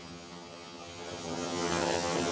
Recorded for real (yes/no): no